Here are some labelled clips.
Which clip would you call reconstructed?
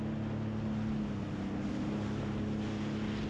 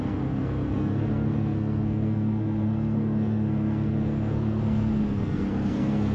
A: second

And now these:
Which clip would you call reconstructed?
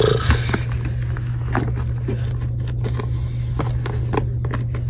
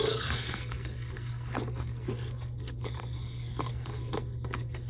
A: second